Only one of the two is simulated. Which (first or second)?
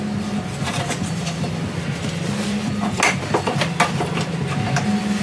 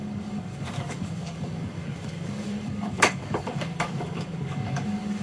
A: second